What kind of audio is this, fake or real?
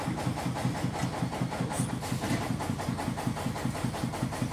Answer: real